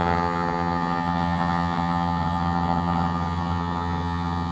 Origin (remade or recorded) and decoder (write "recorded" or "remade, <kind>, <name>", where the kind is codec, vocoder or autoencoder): remade, vocoder, HiFi-GAN